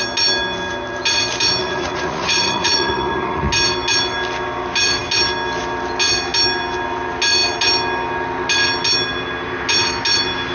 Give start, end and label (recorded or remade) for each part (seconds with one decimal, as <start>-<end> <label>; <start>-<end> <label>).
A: 0.0-1.6 recorded; 1.6-3.5 remade; 3.5-10.5 recorded